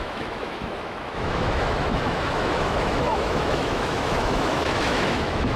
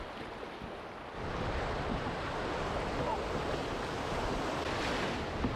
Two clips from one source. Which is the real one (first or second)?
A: second